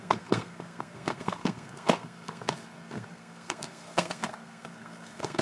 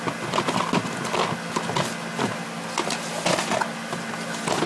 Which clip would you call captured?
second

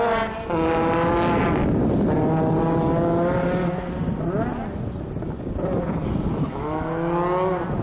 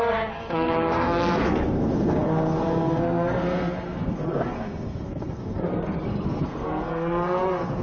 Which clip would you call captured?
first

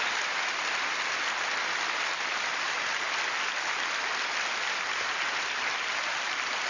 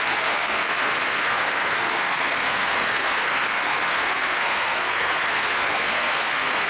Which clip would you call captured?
first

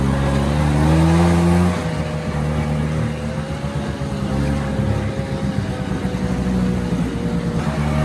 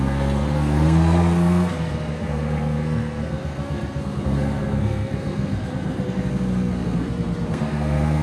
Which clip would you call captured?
first